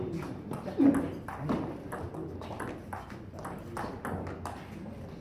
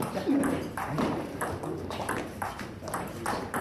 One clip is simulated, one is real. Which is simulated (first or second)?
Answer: second